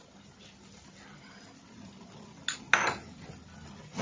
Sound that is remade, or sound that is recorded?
recorded